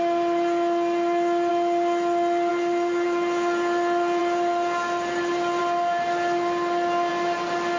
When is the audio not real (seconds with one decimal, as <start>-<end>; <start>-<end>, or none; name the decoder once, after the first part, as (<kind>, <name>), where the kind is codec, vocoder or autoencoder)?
none